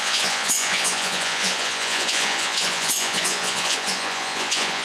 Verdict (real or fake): fake